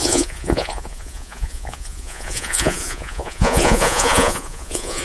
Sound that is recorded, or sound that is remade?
remade